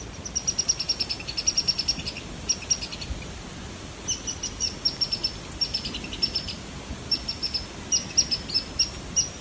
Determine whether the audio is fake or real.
real